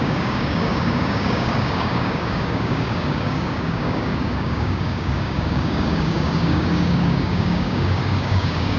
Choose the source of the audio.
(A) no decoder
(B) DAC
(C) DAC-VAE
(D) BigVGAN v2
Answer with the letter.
B